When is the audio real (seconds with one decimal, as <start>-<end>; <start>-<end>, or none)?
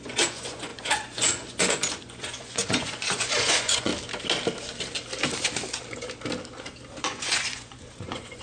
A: 3.9-7.0